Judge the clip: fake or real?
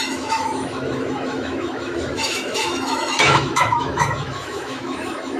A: fake